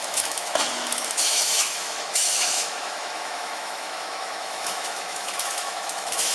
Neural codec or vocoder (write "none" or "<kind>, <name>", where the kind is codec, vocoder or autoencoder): autoencoder, DAC-VAE